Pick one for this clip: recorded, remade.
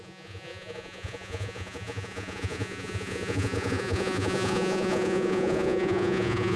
remade